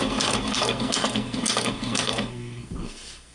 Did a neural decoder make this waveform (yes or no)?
yes